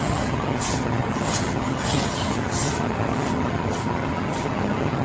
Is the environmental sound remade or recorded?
remade